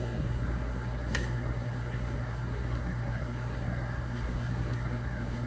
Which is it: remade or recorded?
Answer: remade